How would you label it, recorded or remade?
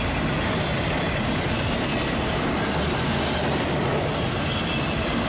recorded